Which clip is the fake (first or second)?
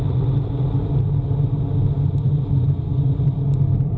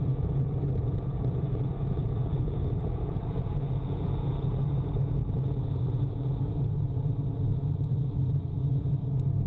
second